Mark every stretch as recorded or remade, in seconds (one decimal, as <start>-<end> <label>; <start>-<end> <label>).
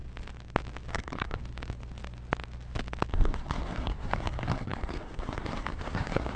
0.0-0.9 recorded; 0.9-1.4 remade; 1.4-3.1 recorded; 3.1-6.4 remade